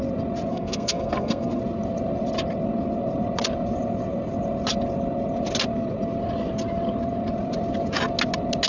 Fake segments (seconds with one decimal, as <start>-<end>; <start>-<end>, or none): 0.5-1.6